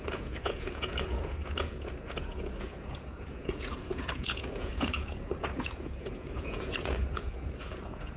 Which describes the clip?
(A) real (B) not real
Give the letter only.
B